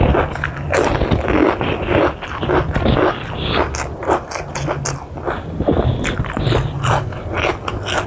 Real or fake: real